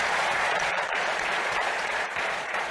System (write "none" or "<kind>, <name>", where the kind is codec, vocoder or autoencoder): vocoder, Vocos